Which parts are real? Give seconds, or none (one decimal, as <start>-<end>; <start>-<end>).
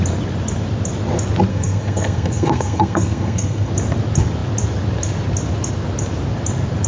0.0-1.5; 3.7-6.9